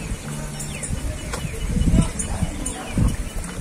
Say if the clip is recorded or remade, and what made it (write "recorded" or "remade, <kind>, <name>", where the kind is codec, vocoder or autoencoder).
recorded